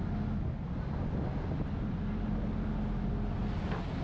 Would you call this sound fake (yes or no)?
no